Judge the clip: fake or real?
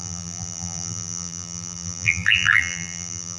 fake